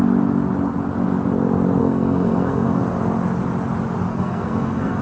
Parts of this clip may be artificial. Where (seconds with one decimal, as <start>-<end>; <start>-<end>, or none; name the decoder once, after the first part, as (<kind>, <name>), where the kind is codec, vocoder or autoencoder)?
1.8-2.8 (codec, SNAC); 4.1-5.0

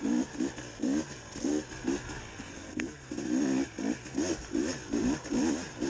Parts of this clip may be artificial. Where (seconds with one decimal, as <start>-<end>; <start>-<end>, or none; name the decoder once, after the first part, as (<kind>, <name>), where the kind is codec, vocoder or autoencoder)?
2.3-3.1 (codec, SNAC)